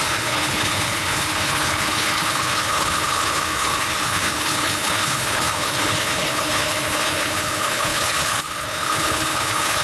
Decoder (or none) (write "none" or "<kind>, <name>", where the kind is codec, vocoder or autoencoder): codec, HILCodec